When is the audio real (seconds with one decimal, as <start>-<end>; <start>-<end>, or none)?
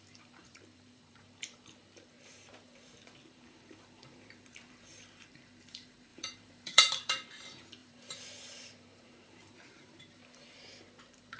none